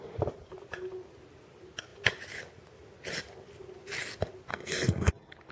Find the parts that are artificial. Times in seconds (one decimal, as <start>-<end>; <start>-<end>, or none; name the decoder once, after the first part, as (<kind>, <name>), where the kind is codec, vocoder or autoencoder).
4.5-5.1 (codec, SNAC)